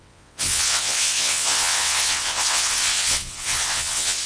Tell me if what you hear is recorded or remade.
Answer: remade